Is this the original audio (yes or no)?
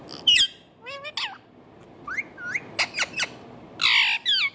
yes